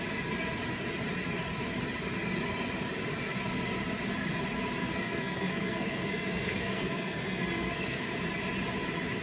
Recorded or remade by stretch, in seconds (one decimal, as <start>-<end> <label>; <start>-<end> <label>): 0.0-4.8 recorded; 4.8-8.2 remade; 8.2-9.2 recorded